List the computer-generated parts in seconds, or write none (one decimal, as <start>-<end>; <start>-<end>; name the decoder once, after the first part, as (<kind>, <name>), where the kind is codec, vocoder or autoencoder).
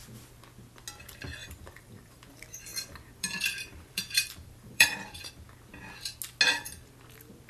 1.4-2.3 (vocoder, BigVGAN v2); 2.7-5.3